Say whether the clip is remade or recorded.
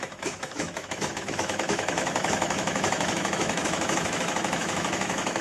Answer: remade